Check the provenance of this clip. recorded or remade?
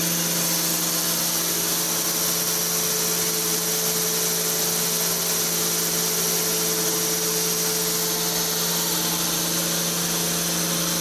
recorded